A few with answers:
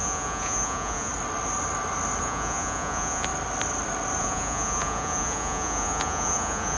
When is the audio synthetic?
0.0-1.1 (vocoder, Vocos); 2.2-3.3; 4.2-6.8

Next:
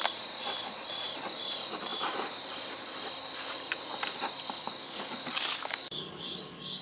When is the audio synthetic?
4.6-6.8 (codec, DAC)